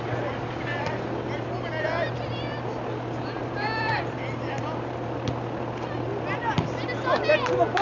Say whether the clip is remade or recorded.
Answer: recorded